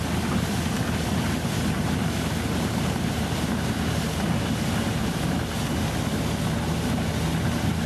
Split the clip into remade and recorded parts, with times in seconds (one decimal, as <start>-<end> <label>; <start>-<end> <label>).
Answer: 0.0-5.0 recorded; 5.0-5.5 remade; 5.5-7.9 recorded